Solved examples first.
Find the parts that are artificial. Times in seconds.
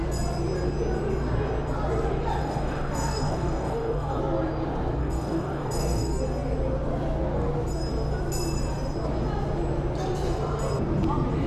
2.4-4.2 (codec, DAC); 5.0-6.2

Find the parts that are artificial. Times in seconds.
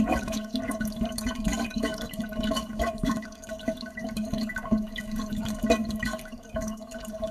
0.0-7.3 (codec, DAC)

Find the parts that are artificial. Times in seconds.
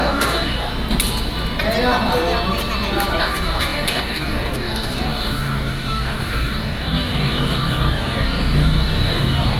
0.0-0.7 (codec, DAC); 3.2-9.6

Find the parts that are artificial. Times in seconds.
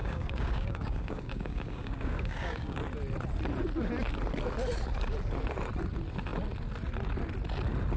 0.0-2.8 (codec, DAC)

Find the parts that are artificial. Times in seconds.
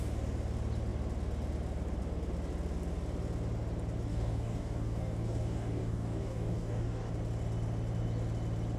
4.1-7.1 (codec, DAC)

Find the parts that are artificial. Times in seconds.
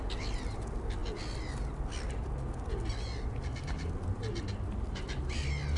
none